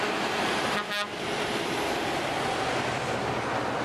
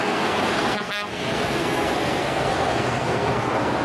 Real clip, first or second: first